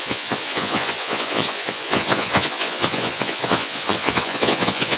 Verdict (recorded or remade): remade